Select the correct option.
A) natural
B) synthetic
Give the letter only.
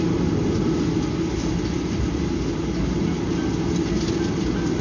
A